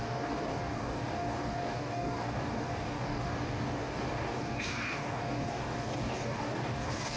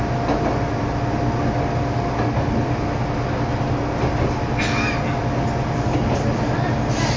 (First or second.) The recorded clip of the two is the second